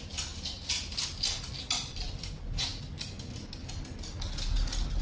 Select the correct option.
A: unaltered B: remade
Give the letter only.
A